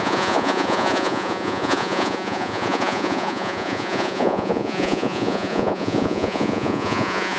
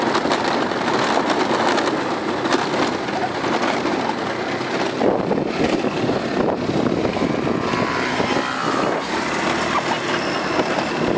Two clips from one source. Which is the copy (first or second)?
first